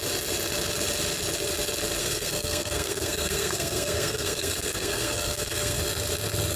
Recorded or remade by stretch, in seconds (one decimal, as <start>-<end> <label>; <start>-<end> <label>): 0.0-2.0 recorded; 2.0-5.8 remade; 5.8-6.6 recorded